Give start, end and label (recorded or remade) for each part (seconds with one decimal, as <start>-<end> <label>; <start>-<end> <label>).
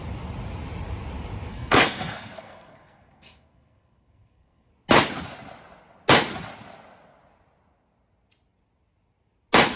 0.0-1.5 recorded; 1.5-4.7 remade; 4.7-9.8 recorded